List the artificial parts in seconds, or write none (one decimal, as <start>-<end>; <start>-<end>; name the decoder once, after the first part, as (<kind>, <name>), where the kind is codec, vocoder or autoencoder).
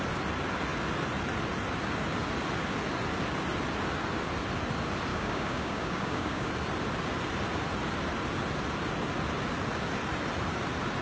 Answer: 5.1-6.5 (codec, DAC)